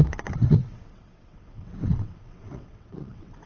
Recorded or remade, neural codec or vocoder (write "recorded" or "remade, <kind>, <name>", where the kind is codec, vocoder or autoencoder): remade, vocoder, WaveNeXt